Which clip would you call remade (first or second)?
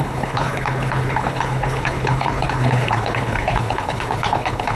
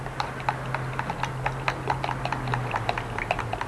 first